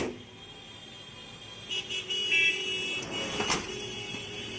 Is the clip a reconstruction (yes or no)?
no